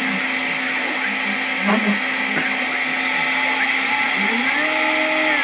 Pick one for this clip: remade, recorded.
recorded